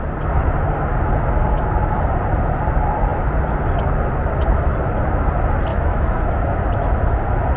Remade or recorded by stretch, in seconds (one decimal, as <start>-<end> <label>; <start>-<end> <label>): 0.0-5.7 recorded; 5.7-6.6 remade; 6.6-7.6 recorded